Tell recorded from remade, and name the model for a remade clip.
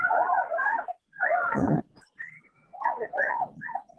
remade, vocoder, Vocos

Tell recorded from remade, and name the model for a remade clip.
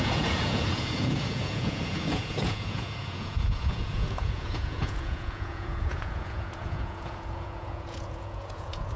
remade, vocoder, Vocos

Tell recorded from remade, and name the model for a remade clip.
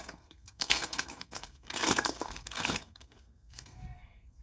remade, codec, SNAC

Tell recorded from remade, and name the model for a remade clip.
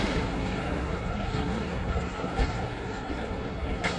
remade, codec, SNAC